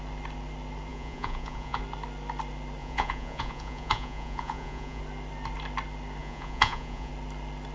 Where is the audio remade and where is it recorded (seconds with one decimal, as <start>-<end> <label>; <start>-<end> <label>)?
0.0-0.9 recorded; 0.9-1.8 remade; 1.8-2.8 recorded; 2.8-5.0 remade; 5.0-6.2 recorded; 6.2-7.1 remade; 7.1-7.7 recorded